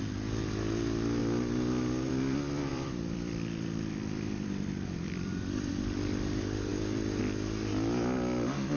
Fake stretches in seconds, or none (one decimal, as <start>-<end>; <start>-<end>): 2.7-5.7